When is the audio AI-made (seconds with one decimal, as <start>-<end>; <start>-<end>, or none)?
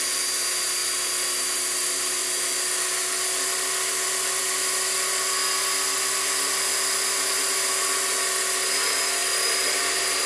2.2-4.4; 9.2-9.8